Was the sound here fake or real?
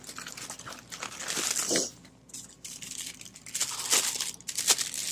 real